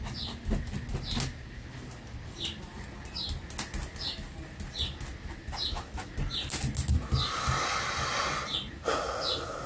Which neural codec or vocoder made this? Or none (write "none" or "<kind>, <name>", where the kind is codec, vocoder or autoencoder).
none